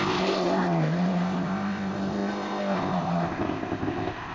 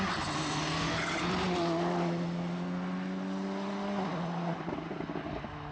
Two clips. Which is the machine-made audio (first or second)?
first